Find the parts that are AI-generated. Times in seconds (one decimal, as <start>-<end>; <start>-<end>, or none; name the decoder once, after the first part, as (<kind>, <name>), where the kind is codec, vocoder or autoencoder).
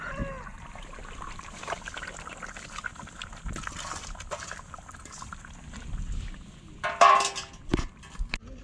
0.5-1.8 (vocoder, BigVGAN v2)